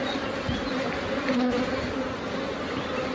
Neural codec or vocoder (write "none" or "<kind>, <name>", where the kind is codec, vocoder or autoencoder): none